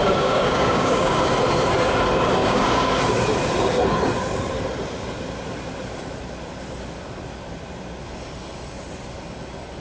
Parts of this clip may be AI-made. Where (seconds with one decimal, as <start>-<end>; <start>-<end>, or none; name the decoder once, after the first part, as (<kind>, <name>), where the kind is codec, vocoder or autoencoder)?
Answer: 0.0-1.3 (codec, DAC); 2.4-3.0